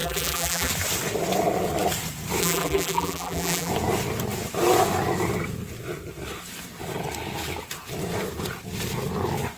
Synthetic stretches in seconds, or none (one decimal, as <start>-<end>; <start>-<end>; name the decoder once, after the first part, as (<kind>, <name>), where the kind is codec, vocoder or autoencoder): 0.0-0.7 (vocoder, BigVGAN v2); 2.4-3.7